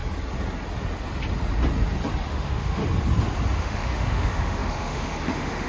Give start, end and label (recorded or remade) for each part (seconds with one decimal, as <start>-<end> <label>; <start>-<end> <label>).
0.0-2.3 recorded; 2.3-2.8 remade; 2.8-3.6 recorded; 3.6-5.7 remade